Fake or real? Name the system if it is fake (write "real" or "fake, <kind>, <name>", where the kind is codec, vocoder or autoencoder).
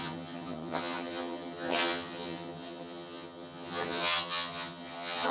fake, vocoder, HiFi-GAN